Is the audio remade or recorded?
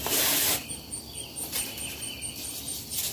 remade